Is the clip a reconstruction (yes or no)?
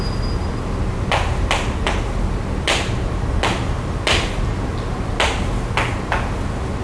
no